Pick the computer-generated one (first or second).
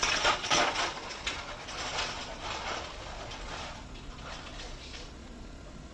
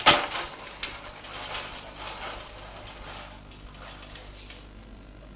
first